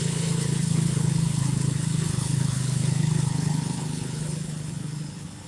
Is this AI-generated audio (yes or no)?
yes